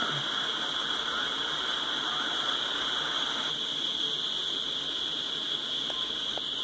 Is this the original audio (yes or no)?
yes